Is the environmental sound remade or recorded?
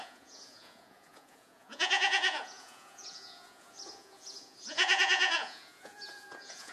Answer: remade